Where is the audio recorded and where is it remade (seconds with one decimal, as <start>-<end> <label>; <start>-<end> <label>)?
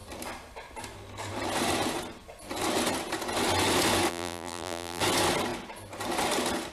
0.0-4.1 recorded; 4.1-5.0 remade; 5.0-6.7 recorded